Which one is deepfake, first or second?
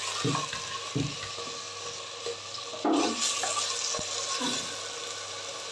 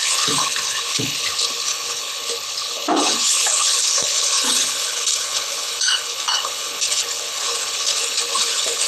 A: second